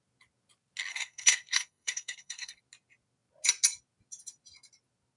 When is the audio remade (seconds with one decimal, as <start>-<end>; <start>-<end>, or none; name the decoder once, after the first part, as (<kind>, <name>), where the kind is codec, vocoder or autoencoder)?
0.9-2.6 (codec, SNAC)

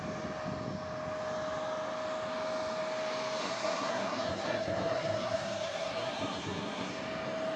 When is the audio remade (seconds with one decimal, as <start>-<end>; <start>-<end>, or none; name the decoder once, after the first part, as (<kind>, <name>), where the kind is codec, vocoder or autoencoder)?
3.4-6.9 (codec, SNAC)